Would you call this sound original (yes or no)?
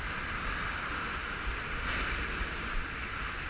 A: yes